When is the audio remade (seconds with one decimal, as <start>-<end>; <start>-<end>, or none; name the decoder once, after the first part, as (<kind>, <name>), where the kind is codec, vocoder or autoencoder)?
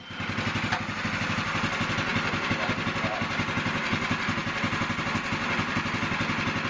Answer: none